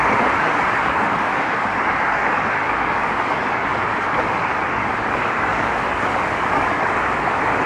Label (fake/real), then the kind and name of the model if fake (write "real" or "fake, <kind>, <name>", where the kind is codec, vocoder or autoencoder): fake, codec, DAC